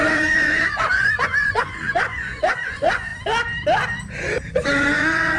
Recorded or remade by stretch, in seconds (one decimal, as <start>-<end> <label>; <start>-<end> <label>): 0.0-3.1 remade; 3.1-4.5 recorded; 4.5-5.4 remade

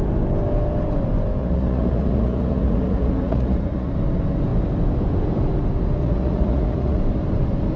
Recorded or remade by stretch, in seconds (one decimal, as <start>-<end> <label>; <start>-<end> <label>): 0.0-1.4 recorded; 1.4-3.9 remade; 3.9-6.0 recorded; 6.0-7.0 remade; 7.0-7.8 recorded

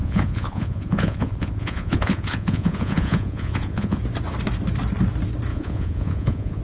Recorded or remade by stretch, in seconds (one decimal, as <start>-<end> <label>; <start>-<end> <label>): 0.0-4.0 remade; 4.0-5.5 recorded; 5.5-6.6 remade